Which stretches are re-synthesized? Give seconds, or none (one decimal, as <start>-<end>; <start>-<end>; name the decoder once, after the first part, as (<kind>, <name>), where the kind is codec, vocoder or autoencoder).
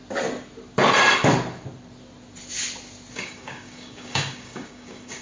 3.1-5.2 (codec, DAC)